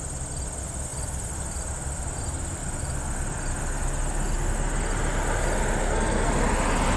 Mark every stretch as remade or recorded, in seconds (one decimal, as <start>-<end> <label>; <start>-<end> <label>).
0.0-5.8 recorded; 5.8-6.3 remade; 6.3-7.0 recorded